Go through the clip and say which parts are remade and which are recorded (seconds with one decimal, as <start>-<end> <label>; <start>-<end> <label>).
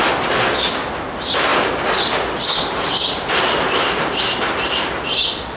0.0-5.6 recorded